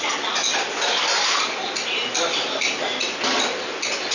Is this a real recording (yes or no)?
yes